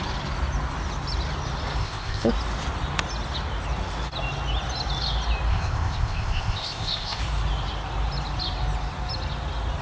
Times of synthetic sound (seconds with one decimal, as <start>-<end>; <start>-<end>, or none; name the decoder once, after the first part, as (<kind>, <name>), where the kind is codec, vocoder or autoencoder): 1.8-2.3 (codec, ZipCodec); 5.5-7.2